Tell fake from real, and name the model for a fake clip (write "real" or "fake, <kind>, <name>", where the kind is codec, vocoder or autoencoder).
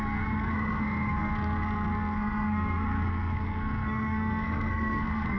fake, codec, SNAC